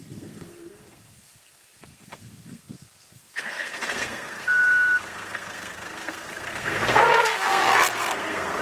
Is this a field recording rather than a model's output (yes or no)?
no